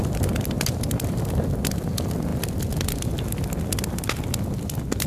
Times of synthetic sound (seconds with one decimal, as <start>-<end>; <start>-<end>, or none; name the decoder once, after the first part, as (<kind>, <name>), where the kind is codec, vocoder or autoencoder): none